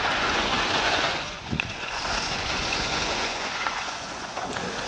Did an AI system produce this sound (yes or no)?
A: yes